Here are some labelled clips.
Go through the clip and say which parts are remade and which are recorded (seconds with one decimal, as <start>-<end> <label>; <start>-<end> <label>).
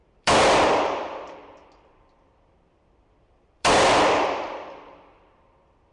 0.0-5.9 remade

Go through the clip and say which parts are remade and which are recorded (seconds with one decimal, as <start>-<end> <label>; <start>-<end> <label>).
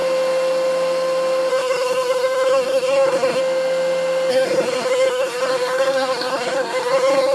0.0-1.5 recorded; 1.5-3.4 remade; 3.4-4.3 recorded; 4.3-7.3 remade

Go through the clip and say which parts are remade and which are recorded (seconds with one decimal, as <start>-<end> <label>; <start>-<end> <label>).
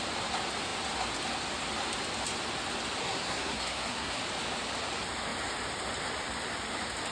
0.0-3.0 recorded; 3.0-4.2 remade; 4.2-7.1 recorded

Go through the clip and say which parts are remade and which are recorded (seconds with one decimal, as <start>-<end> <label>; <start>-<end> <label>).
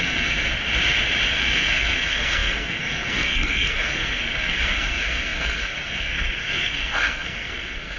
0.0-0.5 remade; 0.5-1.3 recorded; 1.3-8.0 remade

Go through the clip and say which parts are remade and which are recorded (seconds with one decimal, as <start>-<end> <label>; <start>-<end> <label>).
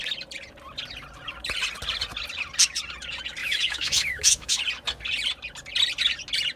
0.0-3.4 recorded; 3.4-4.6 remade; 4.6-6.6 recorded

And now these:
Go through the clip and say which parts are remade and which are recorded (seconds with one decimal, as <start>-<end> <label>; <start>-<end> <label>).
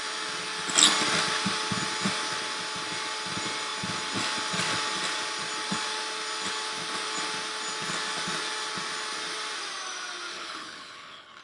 0.0-10.3 recorded; 10.3-11.4 remade